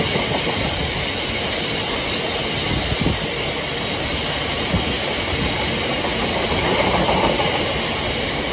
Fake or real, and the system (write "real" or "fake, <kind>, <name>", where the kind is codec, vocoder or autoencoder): real